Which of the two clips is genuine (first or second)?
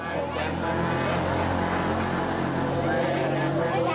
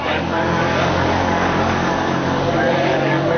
first